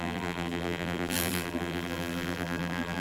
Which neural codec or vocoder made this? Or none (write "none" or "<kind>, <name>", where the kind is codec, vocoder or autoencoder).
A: vocoder, BigVGAN v2